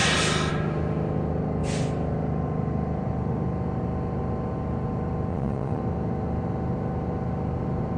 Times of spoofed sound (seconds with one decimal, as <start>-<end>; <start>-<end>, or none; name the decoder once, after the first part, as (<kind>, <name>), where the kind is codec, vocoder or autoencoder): 5.3-5.8 (vocoder, Vocos)